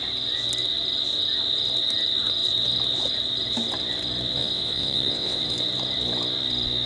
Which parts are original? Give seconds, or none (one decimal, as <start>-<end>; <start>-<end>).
0.0-4.4; 5.4-6.9